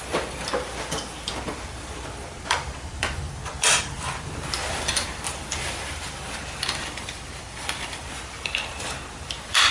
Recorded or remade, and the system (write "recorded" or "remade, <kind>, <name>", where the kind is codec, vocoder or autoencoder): remade, vocoder, BigVGAN v2